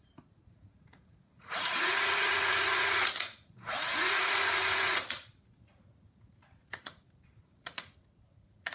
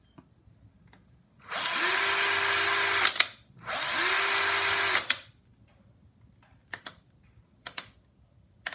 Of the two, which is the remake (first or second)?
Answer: first